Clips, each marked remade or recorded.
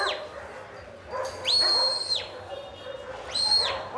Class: recorded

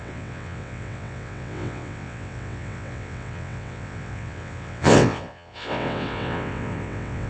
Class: remade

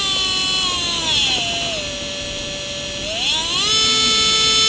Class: recorded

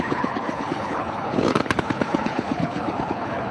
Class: remade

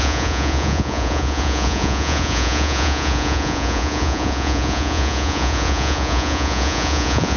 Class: remade